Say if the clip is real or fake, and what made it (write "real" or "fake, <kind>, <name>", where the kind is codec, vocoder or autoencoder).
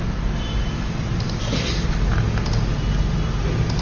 real